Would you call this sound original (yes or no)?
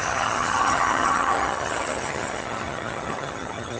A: no